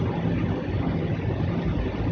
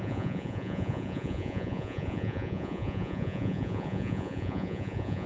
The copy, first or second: second